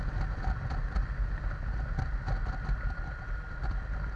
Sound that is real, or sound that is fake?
real